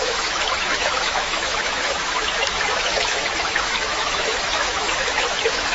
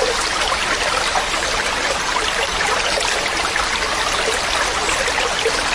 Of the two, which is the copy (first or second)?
first